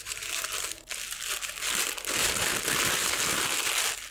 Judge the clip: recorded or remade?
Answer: recorded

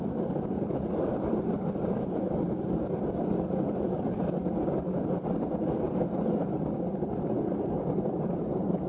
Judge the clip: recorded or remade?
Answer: recorded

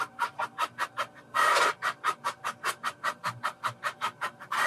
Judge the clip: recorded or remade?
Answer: remade